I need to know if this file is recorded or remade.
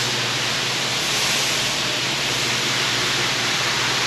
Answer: recorded